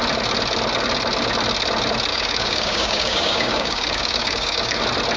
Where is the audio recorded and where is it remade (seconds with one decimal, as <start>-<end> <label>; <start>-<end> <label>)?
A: 0.0-2.1 recorded; 2.1-4.8 remade; 4.8-5.2 recorded